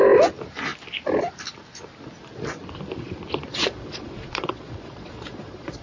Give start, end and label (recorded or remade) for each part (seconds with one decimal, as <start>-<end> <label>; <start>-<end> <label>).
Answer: 0.0-3.5 recorded; 3.5-5.8 remade